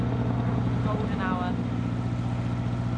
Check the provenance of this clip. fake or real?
real